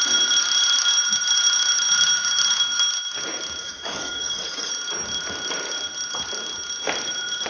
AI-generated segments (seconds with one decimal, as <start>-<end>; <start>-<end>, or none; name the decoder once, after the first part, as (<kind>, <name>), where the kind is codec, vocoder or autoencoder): 3.6-4.7 (codec, DAC)